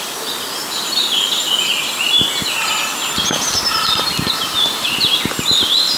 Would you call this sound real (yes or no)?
yes